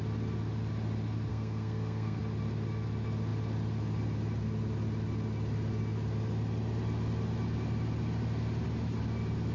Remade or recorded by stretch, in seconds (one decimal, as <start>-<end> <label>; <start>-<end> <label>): 0.0-1.3 recorded; 1.3-2.2 remade; 2.2-9.5 recorded